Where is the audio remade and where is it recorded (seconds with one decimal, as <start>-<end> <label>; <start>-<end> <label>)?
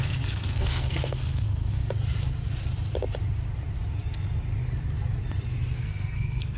0.0-1.8 remade; 1.8-5.8 recorded; 5.8-6.6 remade